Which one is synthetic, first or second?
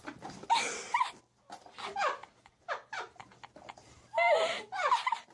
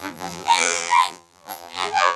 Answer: second